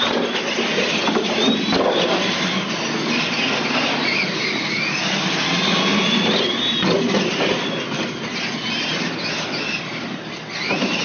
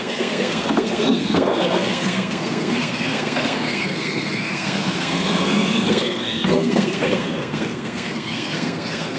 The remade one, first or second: second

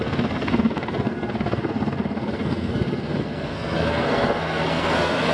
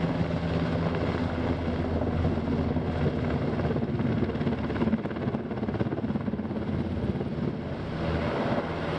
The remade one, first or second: first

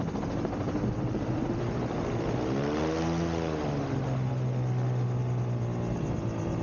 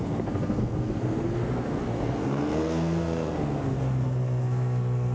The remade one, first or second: second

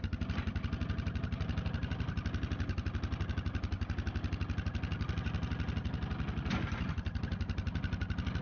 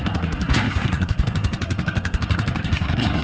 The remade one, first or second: second